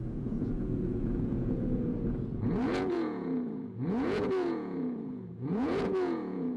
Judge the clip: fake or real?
fake